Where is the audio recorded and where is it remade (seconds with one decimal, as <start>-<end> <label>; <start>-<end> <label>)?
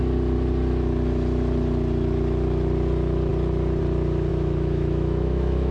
0.0-4.3 recorded; 4.3-5.7 remade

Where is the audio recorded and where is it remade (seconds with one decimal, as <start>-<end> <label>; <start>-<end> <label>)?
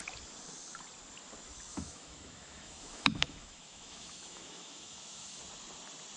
0.0-1.7 recorded; 1.7-5.4 remade; 5.4-6.2 recorded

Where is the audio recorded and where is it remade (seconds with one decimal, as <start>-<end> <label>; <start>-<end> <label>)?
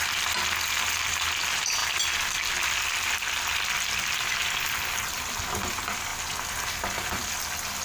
0.0-7.8 recorded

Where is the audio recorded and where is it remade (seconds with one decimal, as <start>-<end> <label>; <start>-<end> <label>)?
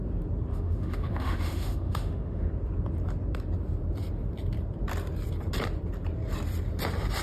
0.0-0.5 recorded; 0.5-2.5 remade; 2.5-7.2 recorded